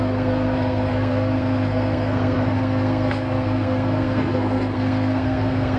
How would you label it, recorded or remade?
remade